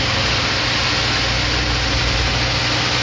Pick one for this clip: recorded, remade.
recorded